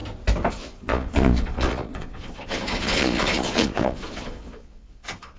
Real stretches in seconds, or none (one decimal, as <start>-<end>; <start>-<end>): 0.0-0.5